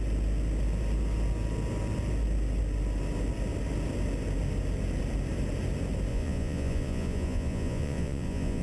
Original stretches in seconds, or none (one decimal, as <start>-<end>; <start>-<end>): 0.0-6.1